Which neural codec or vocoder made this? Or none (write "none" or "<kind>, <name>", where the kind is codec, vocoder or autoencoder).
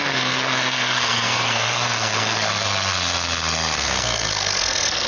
codec, SNAC